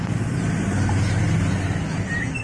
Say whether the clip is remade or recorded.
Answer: recorded